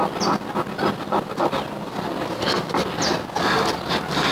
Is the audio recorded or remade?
recorded